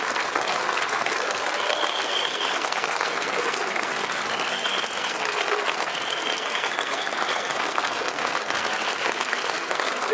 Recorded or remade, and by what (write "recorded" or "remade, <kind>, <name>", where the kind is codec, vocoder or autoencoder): remade, codec, SNAC